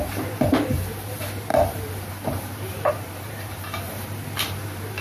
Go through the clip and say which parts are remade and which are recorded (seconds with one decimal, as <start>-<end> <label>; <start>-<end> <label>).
0.0-5.0 remade